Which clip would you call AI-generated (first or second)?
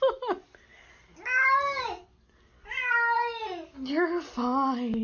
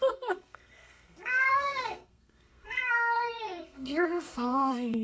second